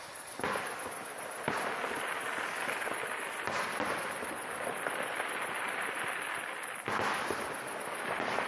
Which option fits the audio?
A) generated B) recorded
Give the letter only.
A